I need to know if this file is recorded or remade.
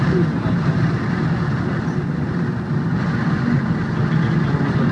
recorded